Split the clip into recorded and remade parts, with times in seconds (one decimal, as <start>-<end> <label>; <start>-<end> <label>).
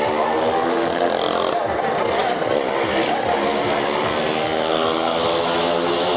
0.0-6.2 recorded